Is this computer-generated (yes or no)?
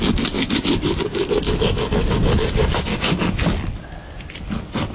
no